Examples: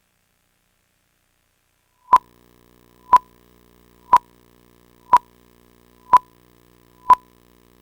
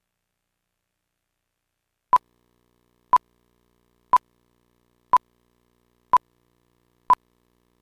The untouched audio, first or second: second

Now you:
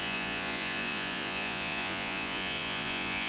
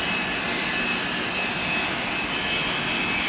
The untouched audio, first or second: second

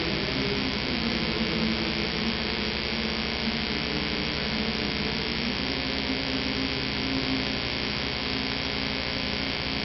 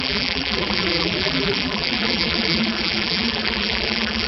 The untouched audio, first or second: first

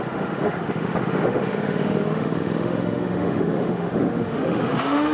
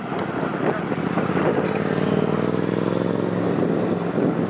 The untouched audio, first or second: second